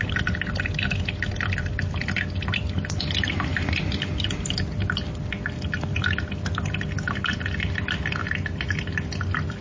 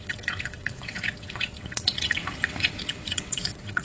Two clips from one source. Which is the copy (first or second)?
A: second